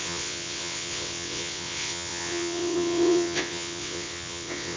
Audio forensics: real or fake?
fake